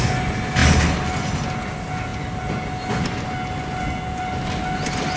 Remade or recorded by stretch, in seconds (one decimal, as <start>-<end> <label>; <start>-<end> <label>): 0.0-5.2 recorded